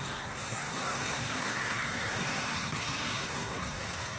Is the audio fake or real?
fake